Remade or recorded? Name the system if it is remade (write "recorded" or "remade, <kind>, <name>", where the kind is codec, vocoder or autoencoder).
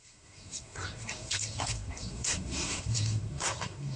remade, codec, SNAC